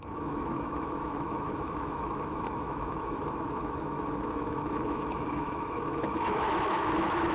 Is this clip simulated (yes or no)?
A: yes